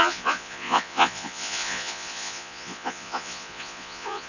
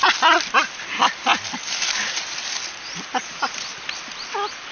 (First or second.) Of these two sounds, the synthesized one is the first